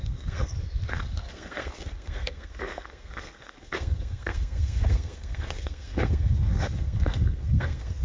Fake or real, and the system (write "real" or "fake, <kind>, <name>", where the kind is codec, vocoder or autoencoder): fake, codec, SNAC